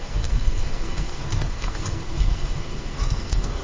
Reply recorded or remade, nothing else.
remade